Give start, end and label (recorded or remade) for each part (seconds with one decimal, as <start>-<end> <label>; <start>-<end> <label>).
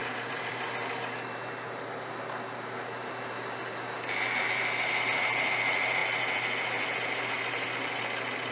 0.0-0.6 remade; 0.6-8.5 recorded